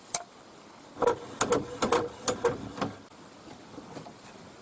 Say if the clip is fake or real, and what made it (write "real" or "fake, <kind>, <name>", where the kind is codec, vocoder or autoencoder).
real